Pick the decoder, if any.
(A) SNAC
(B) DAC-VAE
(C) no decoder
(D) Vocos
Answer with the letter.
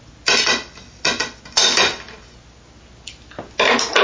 C